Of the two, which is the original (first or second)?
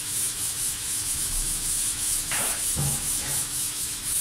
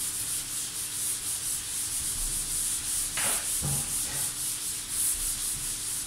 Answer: second